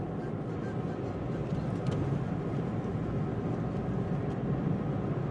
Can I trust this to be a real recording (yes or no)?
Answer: yes